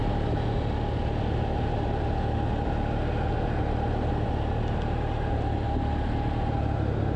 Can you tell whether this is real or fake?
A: real